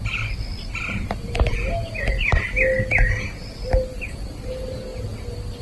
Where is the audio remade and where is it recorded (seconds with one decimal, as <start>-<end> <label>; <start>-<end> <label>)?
0.0-5.6 recorded